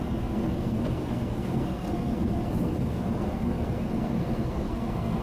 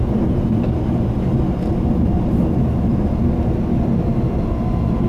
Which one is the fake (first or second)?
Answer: first